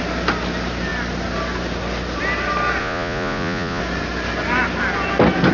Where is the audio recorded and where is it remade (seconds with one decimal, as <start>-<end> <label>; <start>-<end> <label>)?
0.0-2.8 recorded; 2.8-3.8 remade; 3.8-5.5 recorded